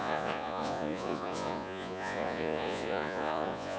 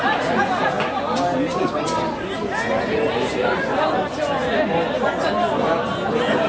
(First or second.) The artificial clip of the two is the first